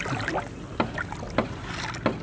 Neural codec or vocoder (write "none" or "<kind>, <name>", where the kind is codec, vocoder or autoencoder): none